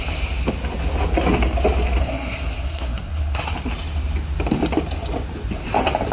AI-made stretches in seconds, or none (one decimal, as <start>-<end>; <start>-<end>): 2.0-3.4